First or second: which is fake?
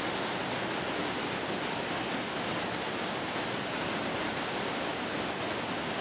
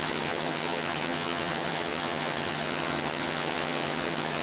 second